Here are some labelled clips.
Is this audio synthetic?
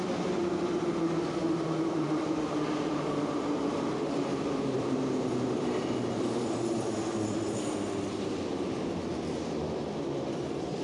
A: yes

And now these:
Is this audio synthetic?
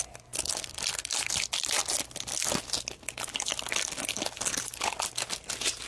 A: no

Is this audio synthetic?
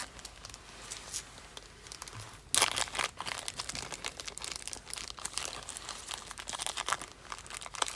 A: no